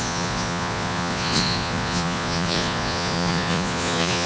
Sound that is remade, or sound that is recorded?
remade